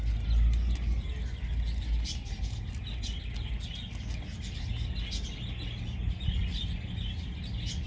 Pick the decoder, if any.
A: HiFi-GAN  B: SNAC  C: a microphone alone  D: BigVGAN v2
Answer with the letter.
C